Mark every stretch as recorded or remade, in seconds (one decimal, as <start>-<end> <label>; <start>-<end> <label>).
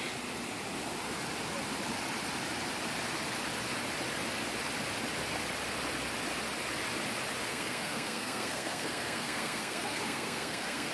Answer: 0.0-7.5 recorded; 7.5-10.9 remade